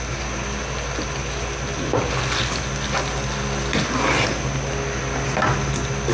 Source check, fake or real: real